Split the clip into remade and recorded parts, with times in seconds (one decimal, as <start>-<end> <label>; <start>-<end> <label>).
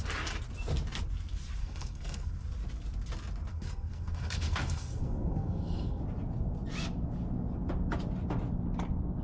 0.0-1.6 recorded; 1.6-2.3 remade; 2.3-3.5 recorded; 3.5-6.0 remade; 6.0-9.2 recorded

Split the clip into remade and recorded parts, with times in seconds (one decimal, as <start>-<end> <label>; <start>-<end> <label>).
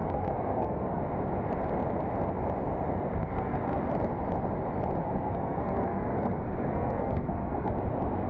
0.0-1.0 remade; 1.0-3.2 recorded; 3.2-3.8 remade; 3.8-5.0 recorded; 5.0-7.7 remade; 7.7-8.3 recorded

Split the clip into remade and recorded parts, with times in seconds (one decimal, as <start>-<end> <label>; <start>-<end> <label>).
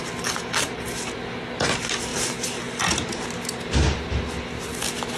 0.0-5.2 recorded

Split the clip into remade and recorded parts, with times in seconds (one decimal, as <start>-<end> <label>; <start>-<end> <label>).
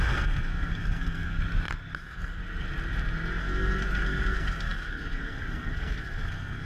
0.0-1.4 remade; 1.4-2.0 recorded; 2.0-2.4 remade; 2.4-3.4 recorded; 3.4-6.7 remade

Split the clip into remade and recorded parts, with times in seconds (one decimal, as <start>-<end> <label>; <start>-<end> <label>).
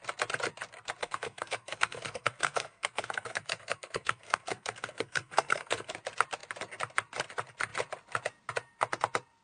0.0-1.0 recorded; 1.0-5.9 remade; 5.9-9.4 recorded